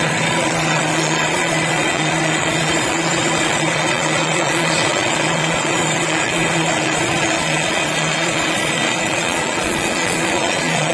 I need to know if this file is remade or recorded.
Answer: remade